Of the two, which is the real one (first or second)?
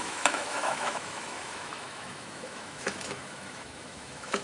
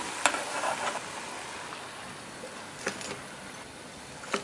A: second